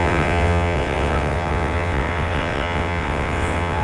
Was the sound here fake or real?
fake